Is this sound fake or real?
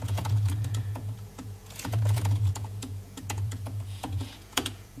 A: fake